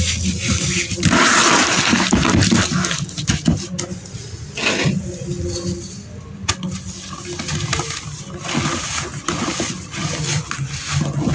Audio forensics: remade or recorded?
recorded